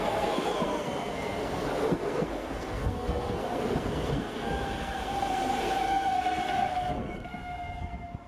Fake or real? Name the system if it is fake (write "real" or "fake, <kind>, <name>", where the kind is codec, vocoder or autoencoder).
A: fake, codec, SNAC